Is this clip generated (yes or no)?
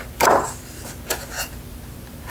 yes